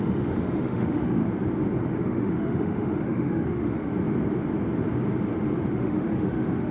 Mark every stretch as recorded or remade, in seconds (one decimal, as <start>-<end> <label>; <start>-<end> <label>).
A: 0.0-1.2 remade; 1.2-2.0 recorded; 2.0-3.9 remade; 3.9-5.7 recorded; 5.7-6.7 remade